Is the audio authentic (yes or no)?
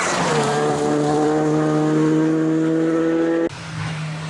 yes